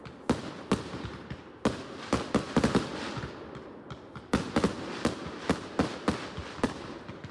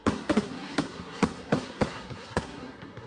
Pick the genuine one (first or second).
first